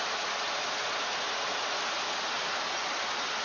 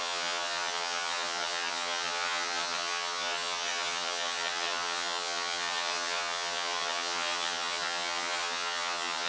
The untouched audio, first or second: first